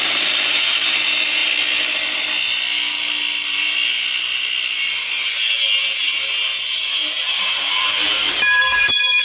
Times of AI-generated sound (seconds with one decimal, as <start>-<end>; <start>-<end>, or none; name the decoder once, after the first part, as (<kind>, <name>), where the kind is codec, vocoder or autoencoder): 0.0-1.4 (vocoder, BigVGAN v2); 6.6-9.2